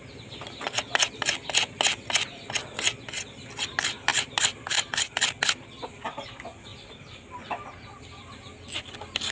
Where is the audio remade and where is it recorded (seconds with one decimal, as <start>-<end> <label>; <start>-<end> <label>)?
0.0-4.1 recorded; 4.1-5.1 remade; 5.1-6.7 recorded; 6.7-8.3 remade; 8.3-9.3 recorded